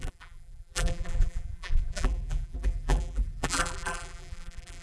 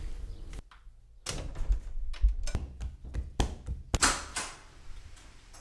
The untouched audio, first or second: second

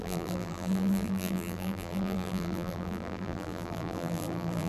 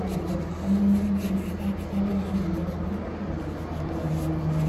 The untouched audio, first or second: second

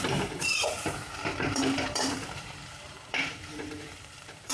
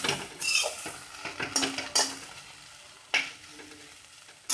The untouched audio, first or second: second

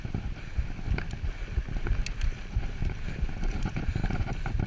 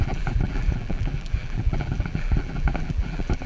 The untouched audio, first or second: first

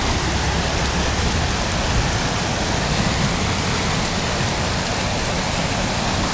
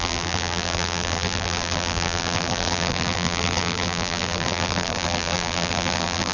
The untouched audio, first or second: first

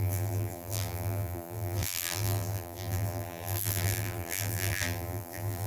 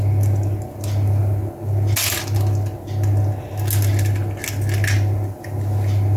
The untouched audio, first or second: second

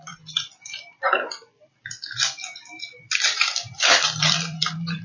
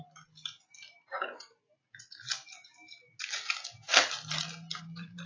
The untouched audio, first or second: second